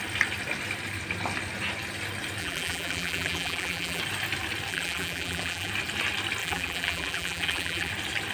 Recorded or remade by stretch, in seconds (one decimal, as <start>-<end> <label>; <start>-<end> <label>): 0.0-2.4 recorded; 2.4-4.0 remade; 4.0-4.7 recorded; 4.7-5.7 remade; 5.7-6.4 recorded; 6.4-7.9 remade; 7.9-8.3 recorded